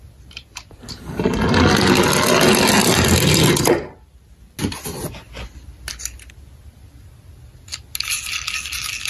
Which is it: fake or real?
real